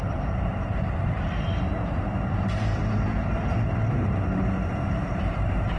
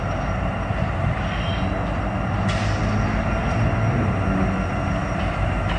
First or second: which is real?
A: second